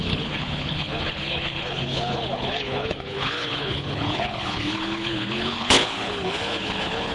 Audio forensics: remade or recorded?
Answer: remade